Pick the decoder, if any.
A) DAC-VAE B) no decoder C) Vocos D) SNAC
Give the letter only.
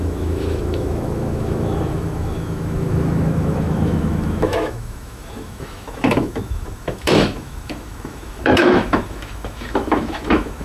A